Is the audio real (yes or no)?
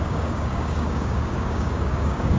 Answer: no